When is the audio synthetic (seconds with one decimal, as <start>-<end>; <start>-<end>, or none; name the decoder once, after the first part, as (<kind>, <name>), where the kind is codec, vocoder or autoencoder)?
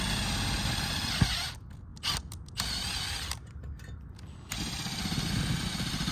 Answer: none